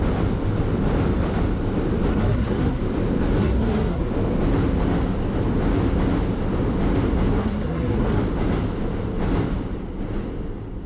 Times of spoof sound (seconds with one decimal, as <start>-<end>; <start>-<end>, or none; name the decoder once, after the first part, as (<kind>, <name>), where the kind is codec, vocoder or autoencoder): 2.1-2.8 (codec, SNAC); 3.4-4.1; 7.3-8.2